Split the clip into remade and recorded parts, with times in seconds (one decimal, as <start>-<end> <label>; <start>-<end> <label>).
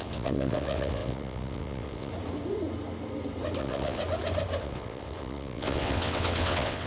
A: 0.0-2.1 remade; 2.1-3.6 recorded; 3.6-4.0 remade; 4.0-4.6 recorded; 4.6-6.9 remade